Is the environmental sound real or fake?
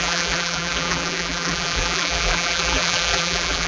fake